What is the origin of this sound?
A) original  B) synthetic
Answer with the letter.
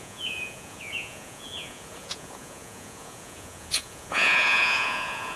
B